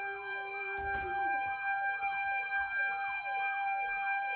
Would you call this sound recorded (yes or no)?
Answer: no